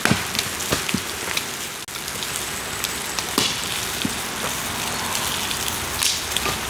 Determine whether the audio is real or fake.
real